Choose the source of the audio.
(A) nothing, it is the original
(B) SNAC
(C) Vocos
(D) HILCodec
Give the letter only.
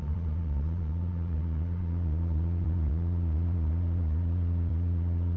C